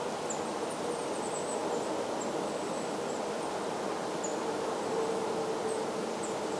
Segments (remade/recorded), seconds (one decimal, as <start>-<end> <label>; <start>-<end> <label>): 0.0-6.6 recorded